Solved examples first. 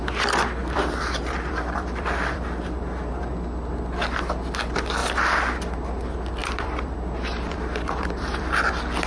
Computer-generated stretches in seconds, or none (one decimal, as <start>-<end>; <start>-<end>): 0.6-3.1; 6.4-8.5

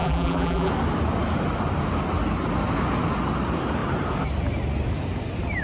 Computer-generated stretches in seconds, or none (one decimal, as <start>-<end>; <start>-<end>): 0.0-0.7

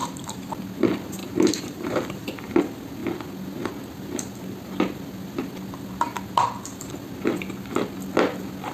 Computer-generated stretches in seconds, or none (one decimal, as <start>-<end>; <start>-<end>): 0.0-0.5; 1.2-2.6